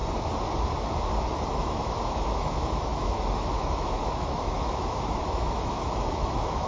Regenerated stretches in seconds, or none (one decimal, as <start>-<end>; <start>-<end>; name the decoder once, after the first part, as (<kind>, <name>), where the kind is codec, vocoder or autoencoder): 1.5-6.7 (autoencoder, DAC-VAE)